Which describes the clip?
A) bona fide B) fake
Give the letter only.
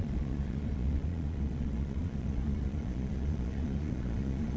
B